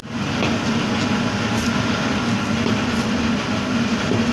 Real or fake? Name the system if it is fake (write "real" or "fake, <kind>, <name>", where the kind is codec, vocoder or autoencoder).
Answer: real